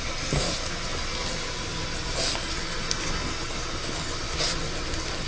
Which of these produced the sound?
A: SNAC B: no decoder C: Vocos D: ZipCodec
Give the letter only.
B